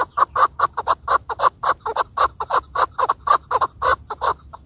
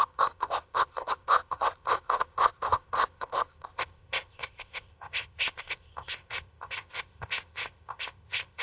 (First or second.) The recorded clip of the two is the first